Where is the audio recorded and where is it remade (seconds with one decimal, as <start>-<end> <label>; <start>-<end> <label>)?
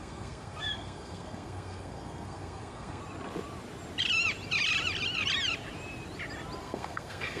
0.0-3.0 remade; 3.0-6.6 recorded; 6.6-7.4 remade